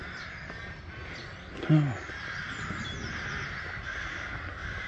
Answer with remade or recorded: recorded